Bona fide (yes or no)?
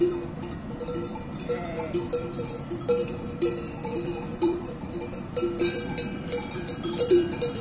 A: no